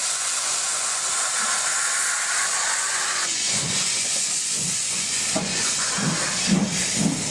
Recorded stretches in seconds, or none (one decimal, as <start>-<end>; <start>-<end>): 1.3-2.4; 5.9-7.3